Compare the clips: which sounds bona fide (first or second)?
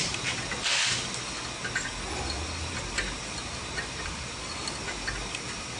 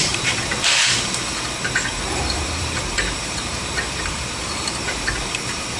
first